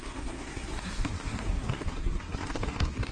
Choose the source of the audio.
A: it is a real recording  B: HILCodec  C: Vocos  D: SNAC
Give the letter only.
D